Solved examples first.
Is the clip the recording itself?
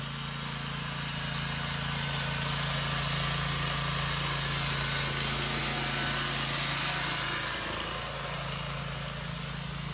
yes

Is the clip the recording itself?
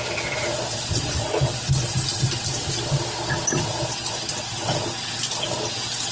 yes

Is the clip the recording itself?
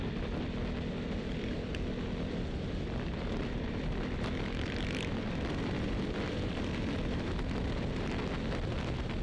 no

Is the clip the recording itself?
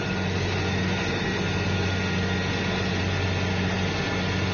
yes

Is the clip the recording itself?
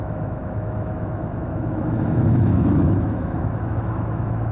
no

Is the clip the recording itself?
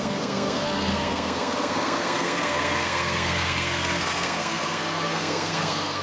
no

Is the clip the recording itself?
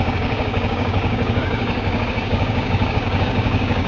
no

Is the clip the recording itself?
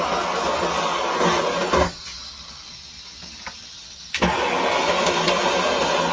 yes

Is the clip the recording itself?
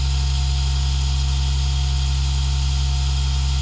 yes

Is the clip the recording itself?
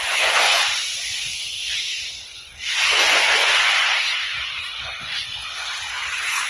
no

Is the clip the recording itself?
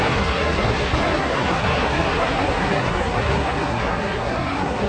no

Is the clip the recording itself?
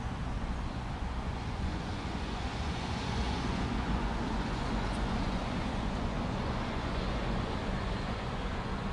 no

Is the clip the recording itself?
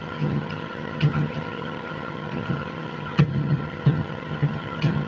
no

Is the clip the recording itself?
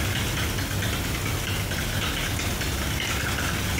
yes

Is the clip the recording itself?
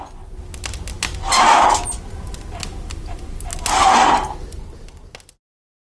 yes